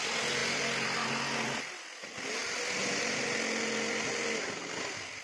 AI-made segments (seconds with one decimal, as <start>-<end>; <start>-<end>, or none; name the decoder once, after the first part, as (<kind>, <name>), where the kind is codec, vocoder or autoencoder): none